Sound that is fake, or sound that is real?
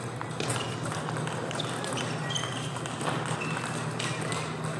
real